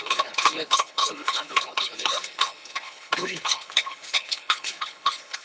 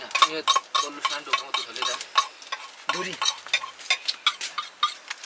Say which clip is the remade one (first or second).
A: first